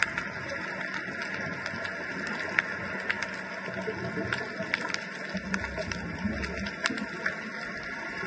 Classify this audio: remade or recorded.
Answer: recorded